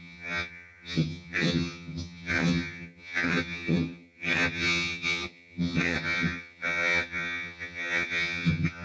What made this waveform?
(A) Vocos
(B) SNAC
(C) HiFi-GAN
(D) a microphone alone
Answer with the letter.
C